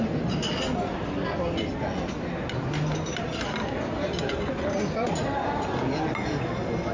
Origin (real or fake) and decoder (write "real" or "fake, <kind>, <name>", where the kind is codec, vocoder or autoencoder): real